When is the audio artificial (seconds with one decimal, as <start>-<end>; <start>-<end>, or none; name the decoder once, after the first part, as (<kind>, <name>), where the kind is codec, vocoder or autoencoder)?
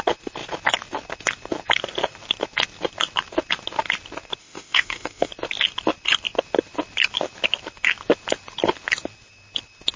4.4-5.3 (autoencoder, DAC-VAE)